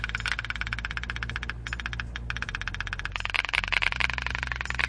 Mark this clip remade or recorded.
recorded